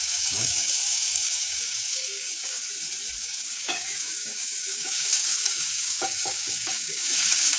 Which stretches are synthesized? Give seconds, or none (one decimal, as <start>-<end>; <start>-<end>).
0.0-2.6; 3.2-7.6